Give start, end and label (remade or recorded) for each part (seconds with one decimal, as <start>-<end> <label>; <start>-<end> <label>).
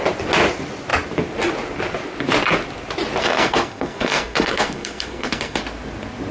0.0-3.2 recorded; 3.2-5.6 remade; 5.6-6.3 recorded